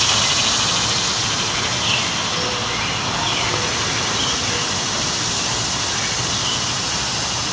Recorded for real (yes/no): yes